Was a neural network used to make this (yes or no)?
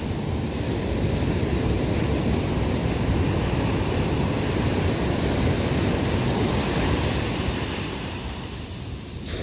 no